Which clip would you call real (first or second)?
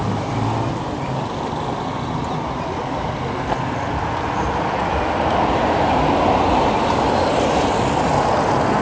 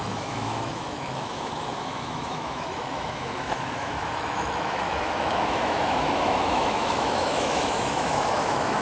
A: first